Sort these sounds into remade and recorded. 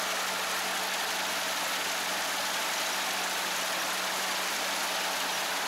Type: recorded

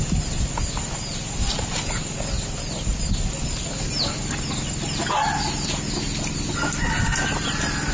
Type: recorded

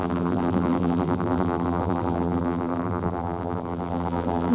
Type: remade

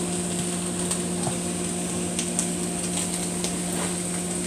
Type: recorded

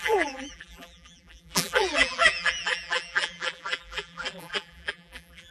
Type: remade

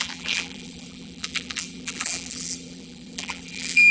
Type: remade